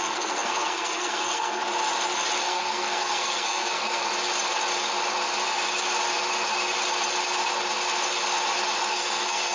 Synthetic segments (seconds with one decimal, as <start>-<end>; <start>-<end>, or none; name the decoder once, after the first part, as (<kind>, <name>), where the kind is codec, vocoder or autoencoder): 0.0-1.6 (codec, SNAC); 2.4-4.0; 8.9-9.5